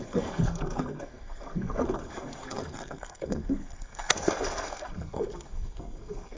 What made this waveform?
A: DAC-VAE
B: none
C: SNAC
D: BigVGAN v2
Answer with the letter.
C